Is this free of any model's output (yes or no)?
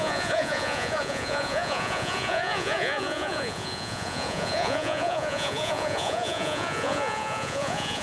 no